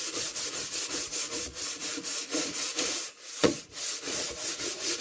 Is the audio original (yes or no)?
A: no